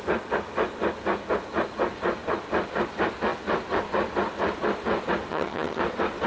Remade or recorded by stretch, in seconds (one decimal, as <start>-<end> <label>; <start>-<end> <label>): 0.0-5.3 recorded; 5.3-5.8 remade; 5.8-6.3 recorded